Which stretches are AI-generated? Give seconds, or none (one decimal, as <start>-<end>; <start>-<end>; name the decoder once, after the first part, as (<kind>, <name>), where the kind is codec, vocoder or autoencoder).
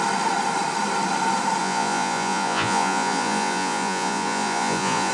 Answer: 1.6-5.1 (vocoder, Vocos)